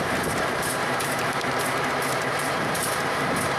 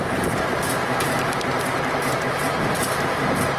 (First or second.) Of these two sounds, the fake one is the second